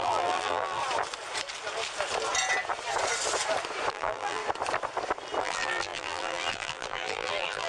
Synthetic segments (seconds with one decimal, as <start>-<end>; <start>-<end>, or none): 0.0-0.8; 3.9-4.4; 5.4-7.7